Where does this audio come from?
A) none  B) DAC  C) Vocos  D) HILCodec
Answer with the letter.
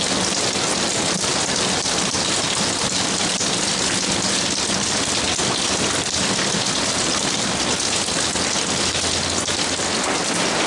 A